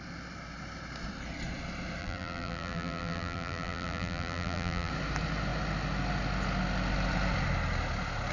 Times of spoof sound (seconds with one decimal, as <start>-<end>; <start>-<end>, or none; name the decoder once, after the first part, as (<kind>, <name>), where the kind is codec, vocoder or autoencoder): 2.0-4.9 (vocoder, BigVGAN v2)